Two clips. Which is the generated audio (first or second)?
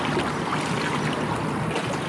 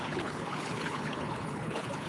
second